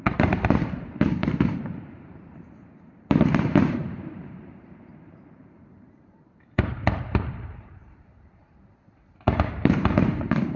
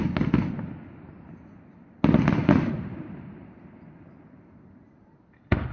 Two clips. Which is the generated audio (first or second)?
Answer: first